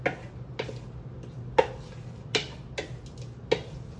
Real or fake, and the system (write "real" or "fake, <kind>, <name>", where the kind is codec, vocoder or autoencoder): real